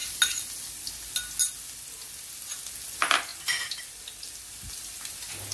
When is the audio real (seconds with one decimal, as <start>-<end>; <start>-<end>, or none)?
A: 0.0-5.5